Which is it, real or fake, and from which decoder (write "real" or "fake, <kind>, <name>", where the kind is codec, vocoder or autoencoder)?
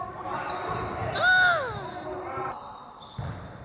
real